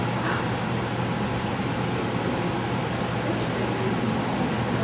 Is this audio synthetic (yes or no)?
no